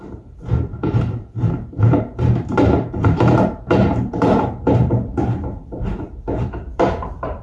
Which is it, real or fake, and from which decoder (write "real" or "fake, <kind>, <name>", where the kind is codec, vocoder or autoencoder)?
fake, vocoder, BigVGAN v2